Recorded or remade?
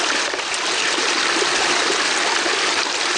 recorded